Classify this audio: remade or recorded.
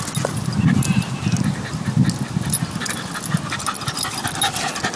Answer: recorded